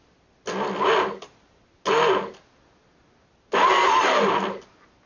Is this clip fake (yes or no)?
no